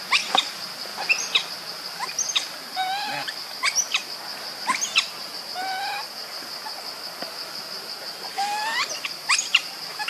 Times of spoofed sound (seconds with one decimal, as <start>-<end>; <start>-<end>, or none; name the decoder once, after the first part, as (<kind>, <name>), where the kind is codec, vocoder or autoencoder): 0.9-1.5 (vocoder, BigVGAN v2)